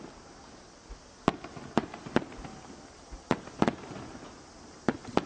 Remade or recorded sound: recorded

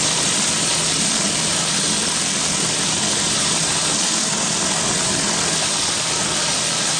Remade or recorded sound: recorded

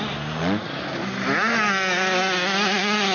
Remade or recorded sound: recorded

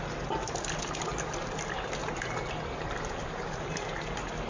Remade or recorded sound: recorded